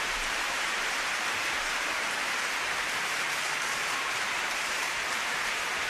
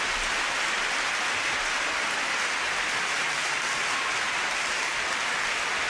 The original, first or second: second